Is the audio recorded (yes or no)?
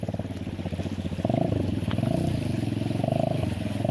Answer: yes